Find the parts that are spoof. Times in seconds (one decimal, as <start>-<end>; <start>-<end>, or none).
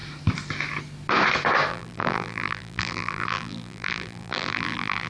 1.7-5.1